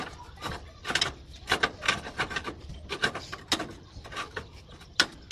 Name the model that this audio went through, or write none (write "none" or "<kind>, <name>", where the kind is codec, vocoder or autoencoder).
none